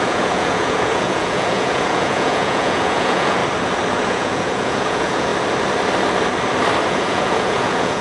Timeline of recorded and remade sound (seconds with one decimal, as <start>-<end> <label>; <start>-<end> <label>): 0.0-3.4 remade; 3.4-3.9 recorded; 3.9-5.3 remade; 5.3-6.9 recorded; 6.9-8.0 remade